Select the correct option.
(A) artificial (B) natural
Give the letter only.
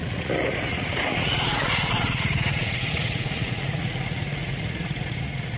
A